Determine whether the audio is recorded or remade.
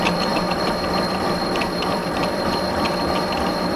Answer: remade